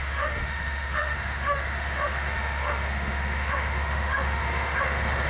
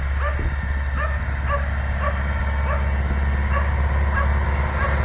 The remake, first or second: first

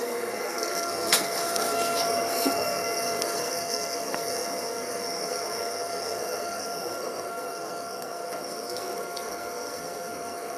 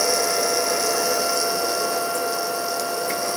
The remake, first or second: first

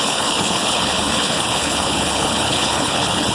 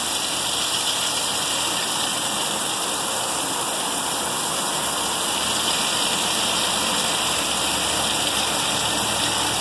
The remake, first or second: first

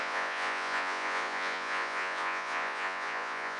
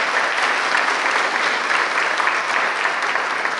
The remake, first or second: first